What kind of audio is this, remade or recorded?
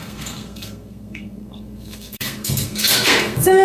remade